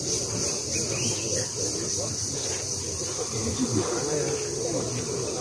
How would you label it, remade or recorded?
recorded